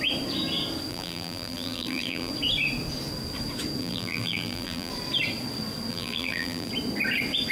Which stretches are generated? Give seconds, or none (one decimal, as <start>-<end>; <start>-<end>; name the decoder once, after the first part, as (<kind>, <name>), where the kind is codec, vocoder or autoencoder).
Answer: 0.9-2.3 (vocoder, BigVGAN v2); 3.8-4.9; 5.9-6.7